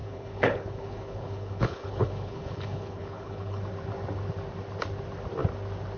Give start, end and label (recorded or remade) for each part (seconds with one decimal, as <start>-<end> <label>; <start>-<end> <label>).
0.0-3.6 remade; 3.6-6.0 recorded